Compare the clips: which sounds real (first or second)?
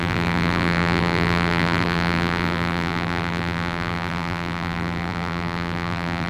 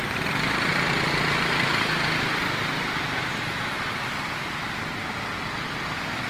second